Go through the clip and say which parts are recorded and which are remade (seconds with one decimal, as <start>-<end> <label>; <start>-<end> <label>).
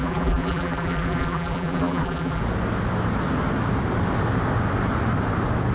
0.0-2.4 remade; 2.4-5.7 recorded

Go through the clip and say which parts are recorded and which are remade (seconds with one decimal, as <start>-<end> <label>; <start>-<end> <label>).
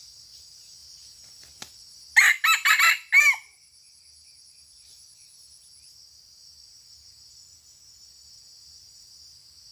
0.0-9.7 recorded